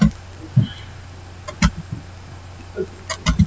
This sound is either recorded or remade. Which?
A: recorded